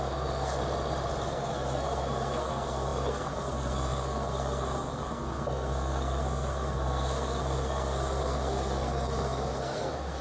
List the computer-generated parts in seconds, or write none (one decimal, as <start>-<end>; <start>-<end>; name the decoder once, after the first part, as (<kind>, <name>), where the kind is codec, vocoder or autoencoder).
0.0-0.6 (codec, SNAC); 1.3-10.2